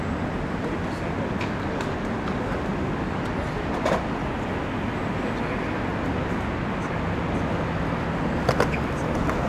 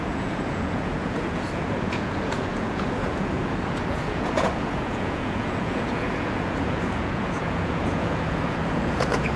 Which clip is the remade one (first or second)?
second